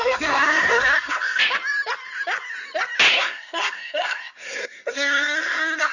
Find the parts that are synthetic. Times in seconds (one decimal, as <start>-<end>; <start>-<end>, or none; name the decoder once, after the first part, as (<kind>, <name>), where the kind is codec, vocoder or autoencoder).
0.0-1.4 (codec, SNAC); 3.1-5.9